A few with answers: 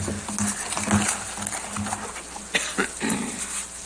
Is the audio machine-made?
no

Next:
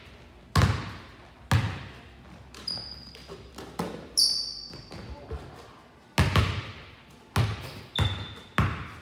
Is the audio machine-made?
no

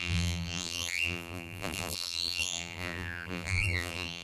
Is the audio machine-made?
yes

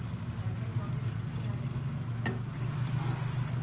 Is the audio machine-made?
no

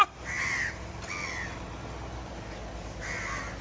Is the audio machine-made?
no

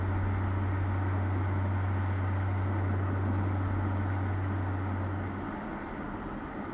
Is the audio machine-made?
no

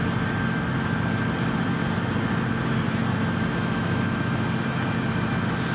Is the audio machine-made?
no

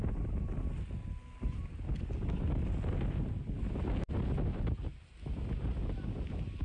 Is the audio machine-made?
no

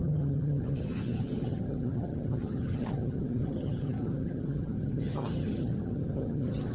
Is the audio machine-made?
yes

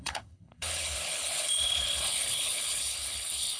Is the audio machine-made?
yes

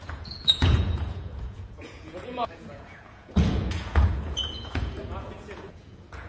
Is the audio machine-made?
yes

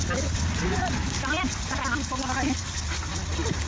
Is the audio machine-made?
no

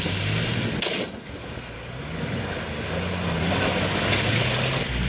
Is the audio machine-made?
no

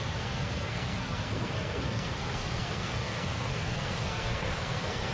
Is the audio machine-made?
yes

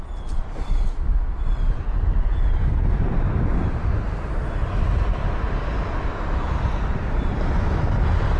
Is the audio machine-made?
no